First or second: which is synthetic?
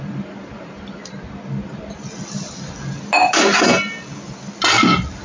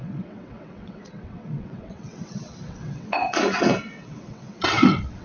second